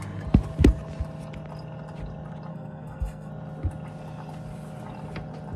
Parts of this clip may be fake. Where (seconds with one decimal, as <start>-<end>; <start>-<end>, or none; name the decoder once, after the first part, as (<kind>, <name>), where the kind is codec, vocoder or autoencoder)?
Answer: 2.5-3.3 (codec, SNAC)